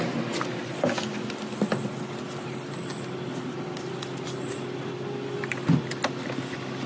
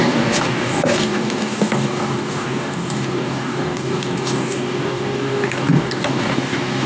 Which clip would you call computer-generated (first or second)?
second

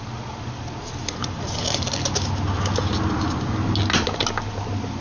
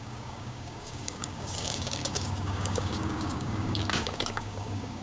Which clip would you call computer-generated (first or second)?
second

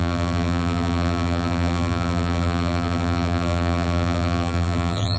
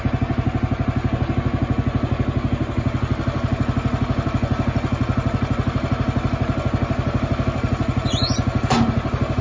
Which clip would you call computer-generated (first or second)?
first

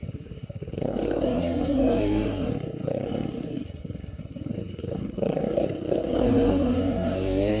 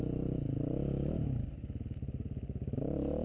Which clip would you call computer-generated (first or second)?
first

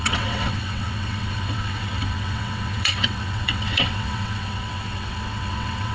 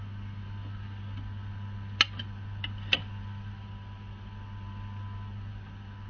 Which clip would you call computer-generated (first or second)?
first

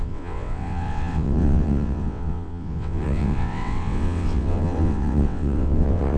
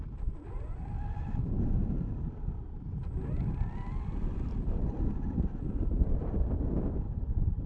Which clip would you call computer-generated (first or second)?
first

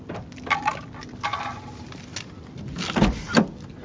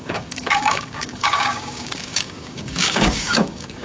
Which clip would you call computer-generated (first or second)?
second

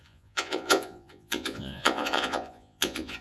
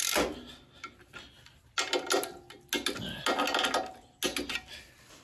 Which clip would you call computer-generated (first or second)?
first